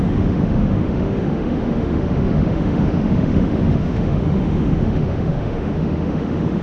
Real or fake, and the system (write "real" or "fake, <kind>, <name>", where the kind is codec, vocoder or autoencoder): fake, autoencoder, DAC-VAE